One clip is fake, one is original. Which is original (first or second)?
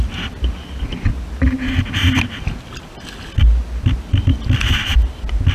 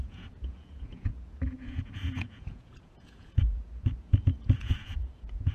first